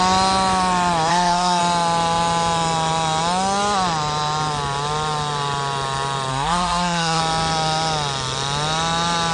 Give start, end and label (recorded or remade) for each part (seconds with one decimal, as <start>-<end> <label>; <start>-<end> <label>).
0.0-1.1 recorded; 1.1-1.6 remade; 1.6-6.3 recorded; 6.3-7.2 remade; 7.2-9.3 recorded